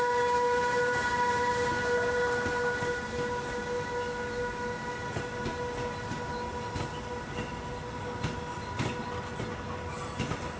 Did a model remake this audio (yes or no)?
no